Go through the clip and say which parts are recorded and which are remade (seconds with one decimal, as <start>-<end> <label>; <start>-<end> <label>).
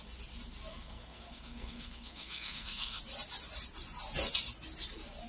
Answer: 0.0-0.7 recorded; 0.7-3.0 remade; 3.0-5.3 recorded